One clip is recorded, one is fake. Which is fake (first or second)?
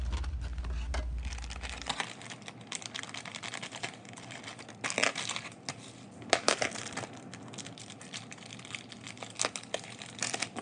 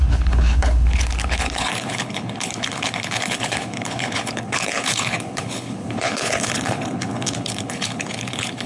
second